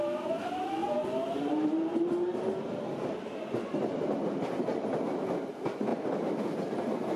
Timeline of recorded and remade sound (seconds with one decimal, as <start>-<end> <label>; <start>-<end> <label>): 0.0-0.8 remade; 0.8-1.4 recorded; 1.4-4.7 remade; 4.7-5.5 recorded; 5.5-5.9 remade; 5.9-7.2 recorded